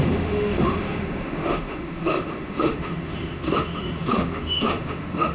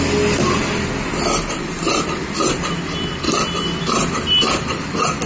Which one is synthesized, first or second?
first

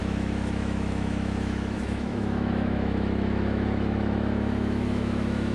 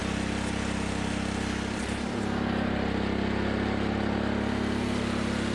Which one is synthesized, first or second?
first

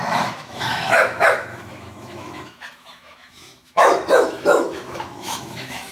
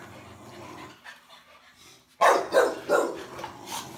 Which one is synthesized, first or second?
first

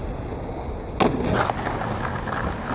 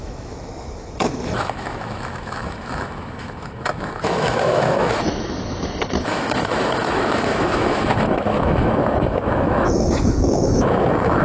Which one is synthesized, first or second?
second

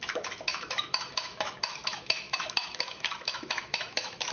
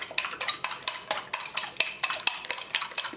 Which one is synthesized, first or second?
first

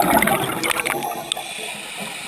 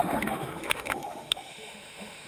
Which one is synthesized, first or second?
second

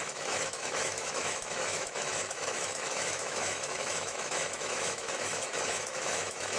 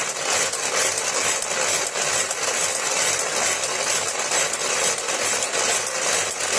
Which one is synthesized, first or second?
first